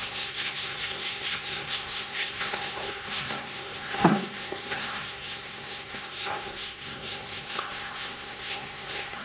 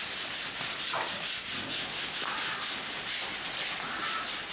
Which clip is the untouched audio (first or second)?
second